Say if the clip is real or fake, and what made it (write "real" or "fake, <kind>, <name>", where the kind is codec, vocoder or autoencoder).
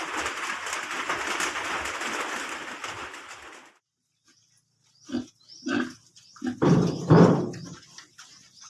real